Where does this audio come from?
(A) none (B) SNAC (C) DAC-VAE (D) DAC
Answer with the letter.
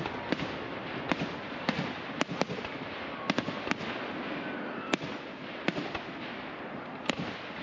A